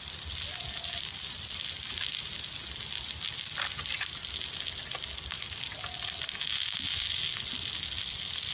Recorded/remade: recorded